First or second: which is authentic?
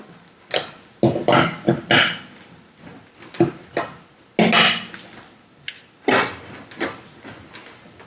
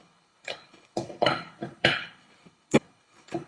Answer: first